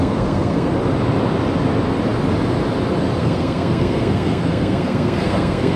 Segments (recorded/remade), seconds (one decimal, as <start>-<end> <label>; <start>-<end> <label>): 0.0-0.7 remade; 0.7-3.2 recorded; 3.2-5.8 remade